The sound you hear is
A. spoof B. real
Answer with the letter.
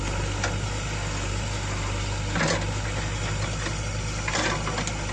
B